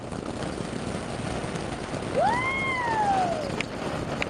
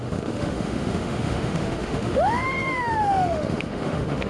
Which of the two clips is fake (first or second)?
second